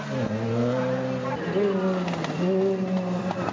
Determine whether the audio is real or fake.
real